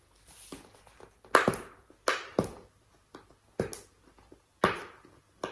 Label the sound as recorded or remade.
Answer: recorded